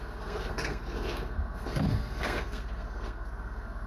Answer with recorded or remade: remade